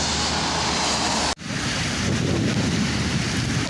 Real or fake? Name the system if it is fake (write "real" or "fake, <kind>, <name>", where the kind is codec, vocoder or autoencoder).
real